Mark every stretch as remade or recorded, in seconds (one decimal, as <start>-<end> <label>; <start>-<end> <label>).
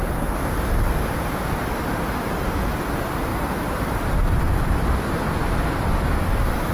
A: 0.0-6.7 recorded